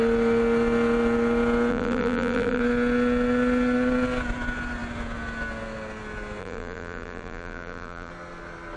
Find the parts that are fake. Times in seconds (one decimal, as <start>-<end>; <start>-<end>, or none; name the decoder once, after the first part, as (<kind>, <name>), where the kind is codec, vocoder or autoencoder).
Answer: 1.7-2.6 (vocoder, BigVGAN v2); 6.4-8.1